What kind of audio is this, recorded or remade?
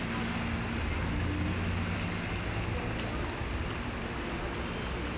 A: recorded